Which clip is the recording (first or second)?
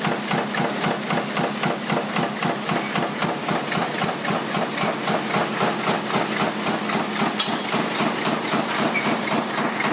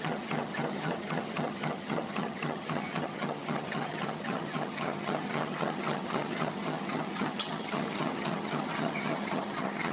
first